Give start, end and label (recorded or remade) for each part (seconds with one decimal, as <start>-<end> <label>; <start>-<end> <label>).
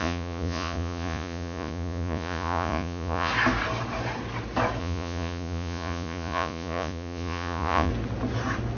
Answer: 0.0-3.3 remade; 3.3-4.8 recorded; 4.8-7.9 remade; 7.9-8.8 recorded